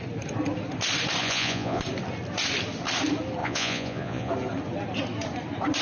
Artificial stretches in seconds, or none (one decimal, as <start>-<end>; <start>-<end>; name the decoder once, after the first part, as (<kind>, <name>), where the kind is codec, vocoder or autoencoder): 1.2-1.8 (vocoder, Vocos); 3.4-4.3